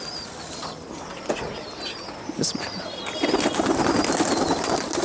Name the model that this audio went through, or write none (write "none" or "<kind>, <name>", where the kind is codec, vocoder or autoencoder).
none